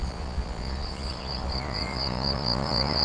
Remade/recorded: remade